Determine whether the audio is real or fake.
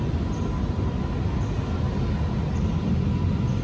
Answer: real